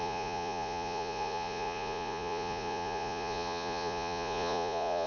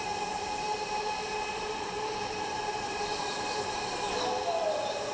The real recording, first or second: second